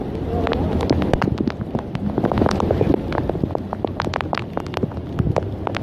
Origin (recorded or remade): recorded